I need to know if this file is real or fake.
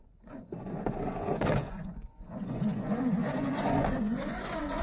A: fake